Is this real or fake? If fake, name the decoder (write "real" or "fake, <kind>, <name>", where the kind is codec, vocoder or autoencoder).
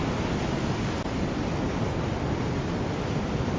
real